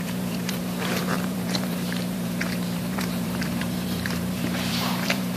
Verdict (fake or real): fake